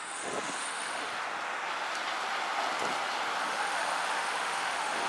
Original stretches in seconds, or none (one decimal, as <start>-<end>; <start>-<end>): 1.1-3.4